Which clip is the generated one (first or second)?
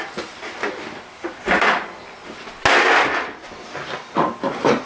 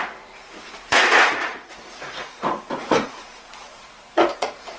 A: second